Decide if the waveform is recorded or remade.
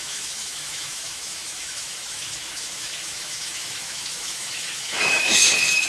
remade